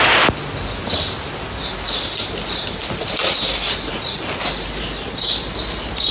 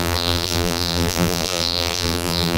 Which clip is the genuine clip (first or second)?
first